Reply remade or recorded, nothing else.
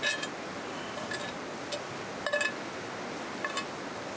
recorded